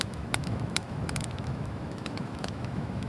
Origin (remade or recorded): remade